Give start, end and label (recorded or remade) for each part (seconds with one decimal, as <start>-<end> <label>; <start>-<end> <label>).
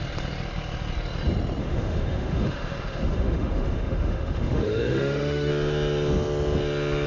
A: 0.0-1.6 recorded; 1.6-5.5 remade; 5.5-7.1 recorded